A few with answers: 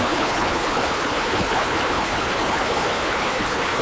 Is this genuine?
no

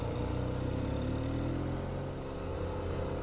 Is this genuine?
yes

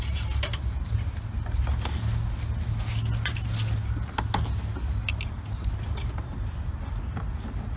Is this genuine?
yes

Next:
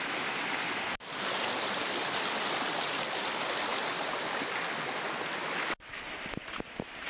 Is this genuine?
yes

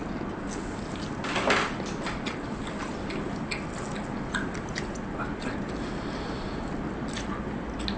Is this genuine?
yes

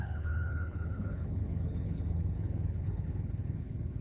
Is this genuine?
no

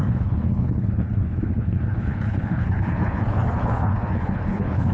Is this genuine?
no